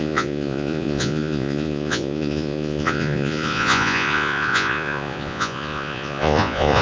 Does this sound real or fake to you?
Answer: fake